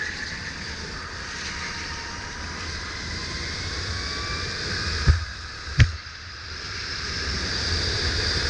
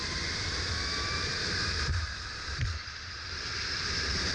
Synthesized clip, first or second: second